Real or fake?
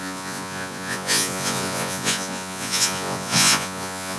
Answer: fake